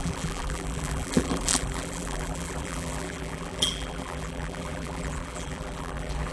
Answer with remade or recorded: remade